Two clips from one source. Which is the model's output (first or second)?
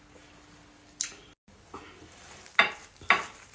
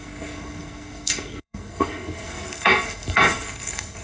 second